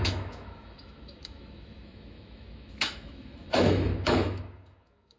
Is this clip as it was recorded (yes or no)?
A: no